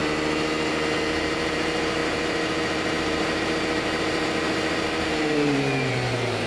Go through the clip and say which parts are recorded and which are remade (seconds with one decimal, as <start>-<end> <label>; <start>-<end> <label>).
0.0-0.7 recorded; 0.7-6.5 remade